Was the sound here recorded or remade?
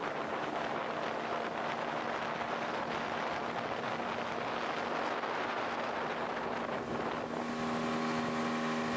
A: recorded